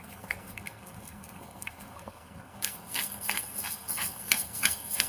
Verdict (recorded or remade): remade